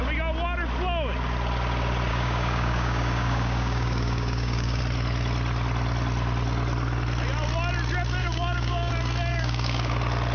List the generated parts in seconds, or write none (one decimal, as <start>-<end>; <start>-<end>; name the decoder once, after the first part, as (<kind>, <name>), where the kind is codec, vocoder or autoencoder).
2.1-4.8 (codec, DAC); 8.2-8.9; 9.3-9.9